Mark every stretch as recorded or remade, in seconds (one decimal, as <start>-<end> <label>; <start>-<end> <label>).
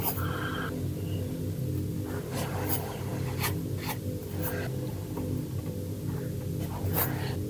0.0-7.5 recorded